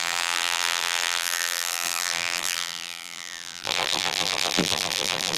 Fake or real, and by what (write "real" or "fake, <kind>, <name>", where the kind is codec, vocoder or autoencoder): fake, vocoder, BigVGAN v2